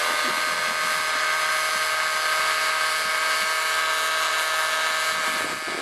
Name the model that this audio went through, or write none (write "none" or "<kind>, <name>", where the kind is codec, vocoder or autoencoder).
none